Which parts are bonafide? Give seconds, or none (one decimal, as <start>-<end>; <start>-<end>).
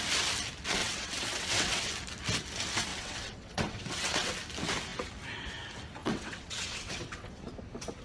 0.0-0.8; 1.9-2.9; 4.3-6.0; 7.3-8.0